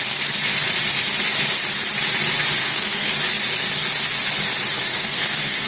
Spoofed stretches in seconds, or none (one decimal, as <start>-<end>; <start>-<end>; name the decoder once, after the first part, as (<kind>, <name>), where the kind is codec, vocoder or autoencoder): 2.6-3.1 (codec, SNAC); 4.9-5.7